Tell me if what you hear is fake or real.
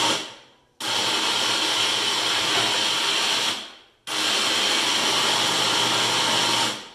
real